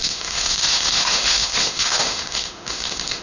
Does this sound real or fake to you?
fake